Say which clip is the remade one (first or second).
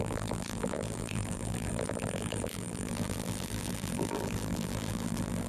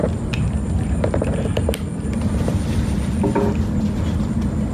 first